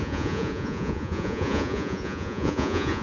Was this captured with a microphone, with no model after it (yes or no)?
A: no